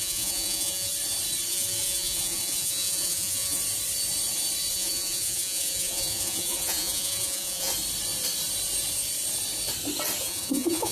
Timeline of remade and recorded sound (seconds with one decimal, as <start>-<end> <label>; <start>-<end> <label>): 0.0-0.9 remade; 0.9-1.5 recorded; 1.5-3.6 remade; 3.6-4.7 recorded; 4.7-7.7 remade; 7.7-10.2 recorded; 10.2-10.9 remade